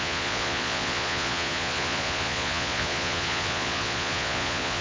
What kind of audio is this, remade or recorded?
remade